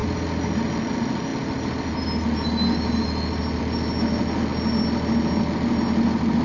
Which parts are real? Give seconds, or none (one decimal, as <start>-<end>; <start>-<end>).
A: 0.0-6.4